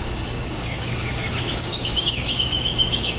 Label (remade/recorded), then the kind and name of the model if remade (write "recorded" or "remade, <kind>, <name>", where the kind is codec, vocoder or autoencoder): remade, codec, DAC